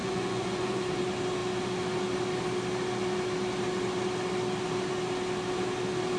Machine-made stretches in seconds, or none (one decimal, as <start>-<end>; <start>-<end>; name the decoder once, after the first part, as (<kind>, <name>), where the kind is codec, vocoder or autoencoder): 0.0-0.8 (vocoder, Vocos)

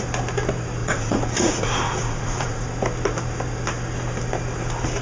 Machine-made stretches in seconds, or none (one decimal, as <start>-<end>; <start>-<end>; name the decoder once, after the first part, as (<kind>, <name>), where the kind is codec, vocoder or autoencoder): 0.8-2.6 (vocoder, Vocos)